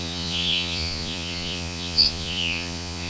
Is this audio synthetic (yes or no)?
yes